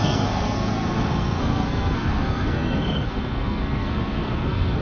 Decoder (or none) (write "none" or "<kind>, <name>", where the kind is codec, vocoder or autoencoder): codec, SNAC